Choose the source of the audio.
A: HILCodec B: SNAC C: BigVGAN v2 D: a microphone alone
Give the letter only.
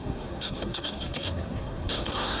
B